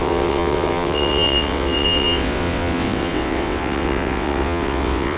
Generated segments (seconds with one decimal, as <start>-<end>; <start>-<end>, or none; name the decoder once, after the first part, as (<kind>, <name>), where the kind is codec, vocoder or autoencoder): 0.0-5.2 (vocoder, WaveNeXt)